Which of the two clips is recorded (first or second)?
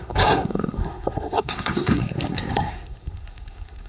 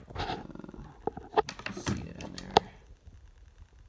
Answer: second